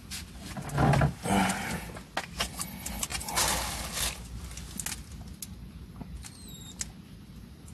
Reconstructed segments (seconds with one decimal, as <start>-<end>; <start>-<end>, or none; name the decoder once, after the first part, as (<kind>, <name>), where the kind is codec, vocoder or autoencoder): none